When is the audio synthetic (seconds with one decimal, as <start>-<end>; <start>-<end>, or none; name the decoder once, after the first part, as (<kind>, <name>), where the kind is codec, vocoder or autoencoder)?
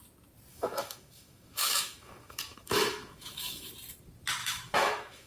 0.5-3.7 (autoencoder, DAC-VAE); 4.4-5.3